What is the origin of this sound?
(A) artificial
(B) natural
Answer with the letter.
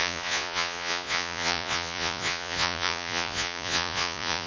A